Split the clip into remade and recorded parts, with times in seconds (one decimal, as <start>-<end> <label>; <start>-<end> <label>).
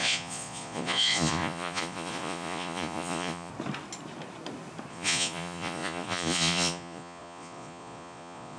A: 0.0-3.5 remade; 3.5-4.9 recorded; 4.9-8.6 remade